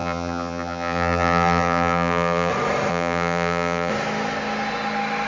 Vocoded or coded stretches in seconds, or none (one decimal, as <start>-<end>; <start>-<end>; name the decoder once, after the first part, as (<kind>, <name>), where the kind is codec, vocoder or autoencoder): 0.0-2.5 (vocoder, BigVGAN v2); 2.9-3.9